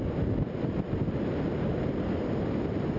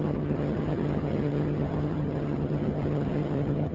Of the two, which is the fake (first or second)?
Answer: second